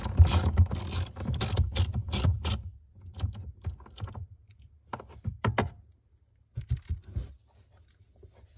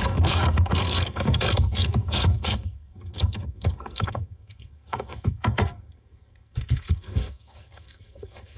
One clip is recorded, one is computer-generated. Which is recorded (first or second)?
first